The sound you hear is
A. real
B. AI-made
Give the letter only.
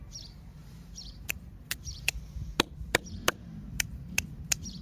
B